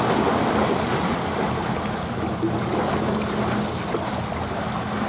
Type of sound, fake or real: real